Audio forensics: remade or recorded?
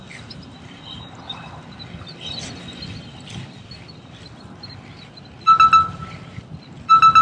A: recorded